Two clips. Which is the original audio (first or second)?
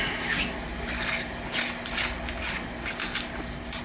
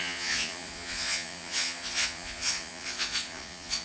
first